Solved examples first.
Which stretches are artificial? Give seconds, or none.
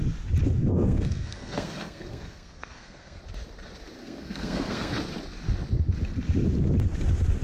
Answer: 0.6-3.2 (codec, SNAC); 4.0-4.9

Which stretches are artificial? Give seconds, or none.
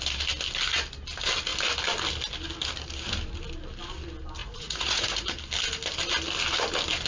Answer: 4.4-5.3 (vocoder, Vocos)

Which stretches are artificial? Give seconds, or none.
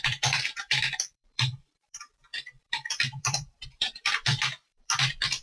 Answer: 0.0-5.4 (vocoder, BigVGAN v2)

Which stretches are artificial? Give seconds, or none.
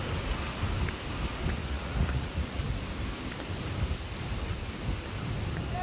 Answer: 1.6-2.6 (vocoder, Vocos)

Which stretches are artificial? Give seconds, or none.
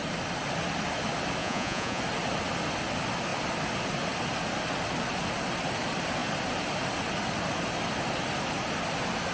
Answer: 1.4-2.0 (vocoder, Vocos)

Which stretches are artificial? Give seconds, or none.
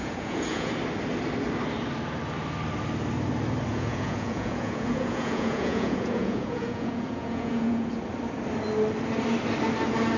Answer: 0.0-0.7 (vocoder, Vocos); 3.7-7.9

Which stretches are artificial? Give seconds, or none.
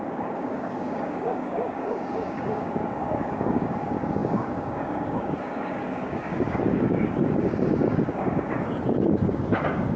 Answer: 0.0-10.0 (codec, DAC)